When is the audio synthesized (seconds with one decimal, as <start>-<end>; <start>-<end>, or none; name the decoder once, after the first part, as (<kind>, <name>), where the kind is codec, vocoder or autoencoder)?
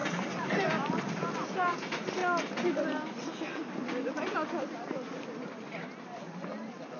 0.0-2.2 (vocoder, BigVGAN v2); 6.4-7.0